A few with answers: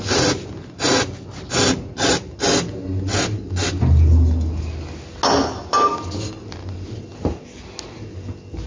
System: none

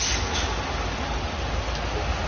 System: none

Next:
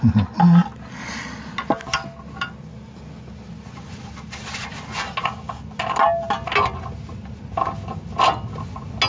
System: none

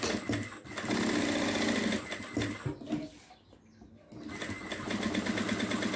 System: none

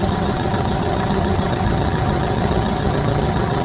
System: vocoder, HiFi-GAN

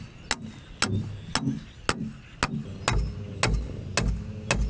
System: none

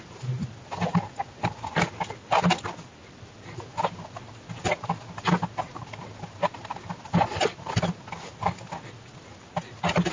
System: none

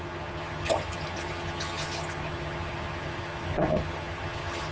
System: vocoder, HiFi-GAN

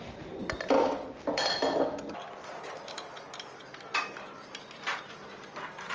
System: none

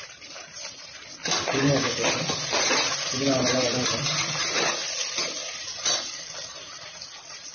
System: none